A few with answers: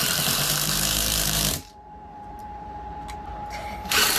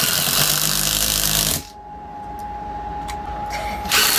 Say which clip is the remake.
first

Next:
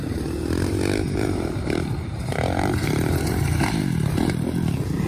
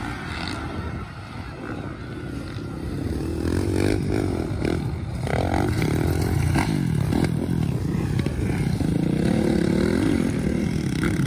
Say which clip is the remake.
first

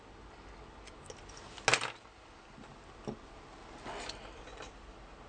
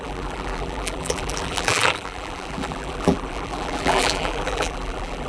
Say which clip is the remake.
second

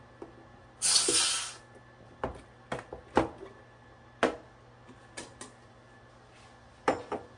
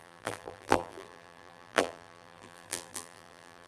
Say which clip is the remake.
second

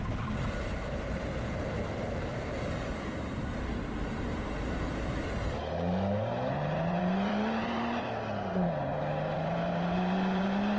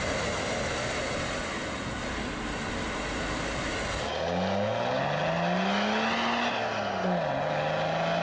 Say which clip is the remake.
first